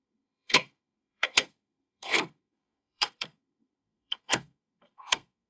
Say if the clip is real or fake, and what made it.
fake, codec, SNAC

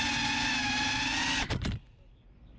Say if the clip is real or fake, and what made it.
real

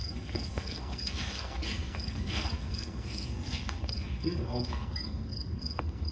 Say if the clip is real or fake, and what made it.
fake, codec, SNAC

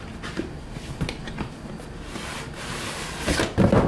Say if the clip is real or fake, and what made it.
real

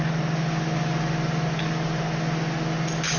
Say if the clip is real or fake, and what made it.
real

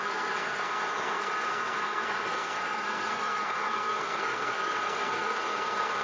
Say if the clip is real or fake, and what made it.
fake, codec, SNAC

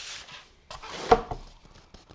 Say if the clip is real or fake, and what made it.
real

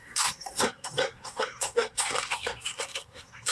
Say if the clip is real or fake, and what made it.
fake, codec, SNAC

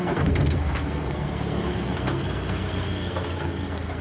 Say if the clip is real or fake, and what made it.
fake, codec, SNAC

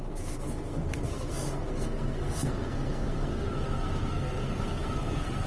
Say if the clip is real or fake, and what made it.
fake, codec, SNAC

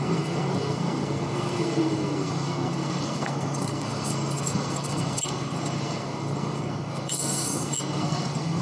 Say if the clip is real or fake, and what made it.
fake, codec, SNAC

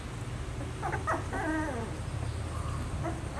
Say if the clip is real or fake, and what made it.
real